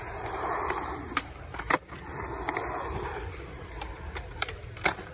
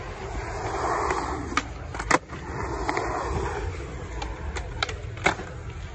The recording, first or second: second